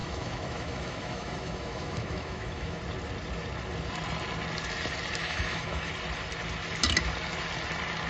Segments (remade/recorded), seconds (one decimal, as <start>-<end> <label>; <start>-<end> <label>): 0.0-2.8 remade; 2.8-5.2 recorded; 5.2-5.9 remade; 5.9-8.1 recorded